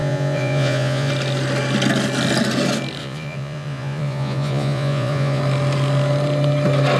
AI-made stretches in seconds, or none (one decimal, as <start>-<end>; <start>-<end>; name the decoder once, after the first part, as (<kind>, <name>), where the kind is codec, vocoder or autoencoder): 0.0-1.1 (vocoder, Vocos); 3.0-5.4